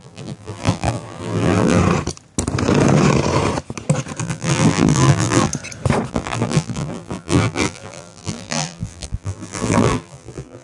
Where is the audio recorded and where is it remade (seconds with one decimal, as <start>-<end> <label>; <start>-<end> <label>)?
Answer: 0.0-1.8 remade; 1.8-4.2 recorded; 4.2-5.5 remade; 5.5-6.1 recorded; 6.1-10.6 remade